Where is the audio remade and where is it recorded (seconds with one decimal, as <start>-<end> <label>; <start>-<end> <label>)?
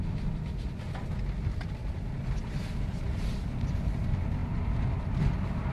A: 0.0-5.7 recorded